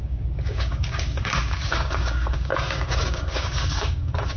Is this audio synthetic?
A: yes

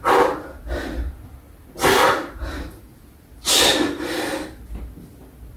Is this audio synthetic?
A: no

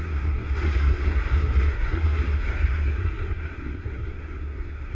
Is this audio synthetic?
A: yes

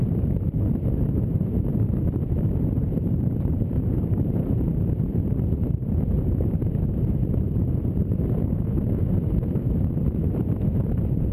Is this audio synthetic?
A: yes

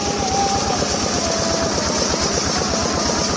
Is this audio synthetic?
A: no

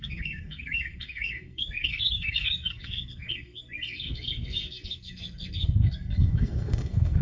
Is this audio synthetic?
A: yes